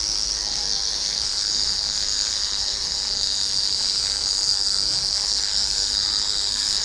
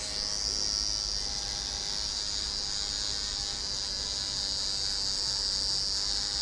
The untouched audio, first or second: second